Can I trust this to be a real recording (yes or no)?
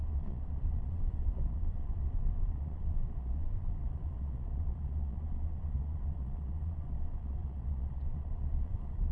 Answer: no